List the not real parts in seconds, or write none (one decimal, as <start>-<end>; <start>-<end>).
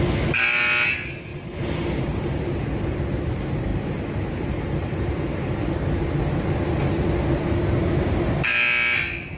1.3-3.0; 3.7-5.7